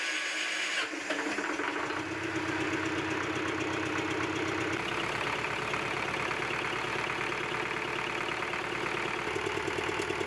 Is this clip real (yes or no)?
yes